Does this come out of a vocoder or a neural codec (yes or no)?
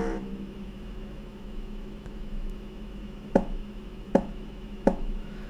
yes